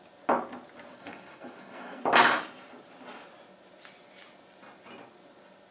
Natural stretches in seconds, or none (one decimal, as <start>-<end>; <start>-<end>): 0.0-0.9; 2.0-5.7